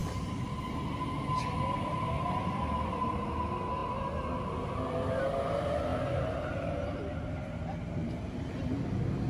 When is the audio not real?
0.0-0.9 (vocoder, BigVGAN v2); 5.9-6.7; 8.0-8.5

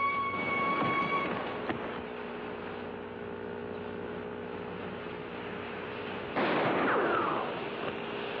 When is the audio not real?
none

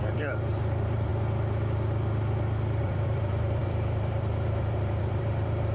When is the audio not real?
0.0-1.1 (vocoder, BigVGAN v2); 2.8-5.7